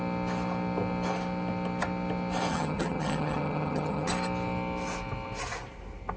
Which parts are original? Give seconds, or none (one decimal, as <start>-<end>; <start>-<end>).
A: 0.0-2.5; 4.1-6.2